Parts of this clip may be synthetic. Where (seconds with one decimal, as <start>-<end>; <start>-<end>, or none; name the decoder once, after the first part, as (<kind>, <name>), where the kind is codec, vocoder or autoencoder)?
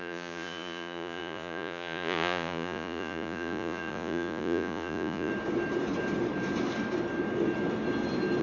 0.0-5.3 (vocoder, Vocos)